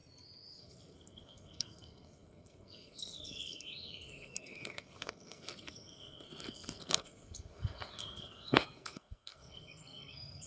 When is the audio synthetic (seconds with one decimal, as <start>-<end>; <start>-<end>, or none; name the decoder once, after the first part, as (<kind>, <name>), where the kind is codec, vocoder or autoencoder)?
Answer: 0.6-10.5 (codec, SNAC)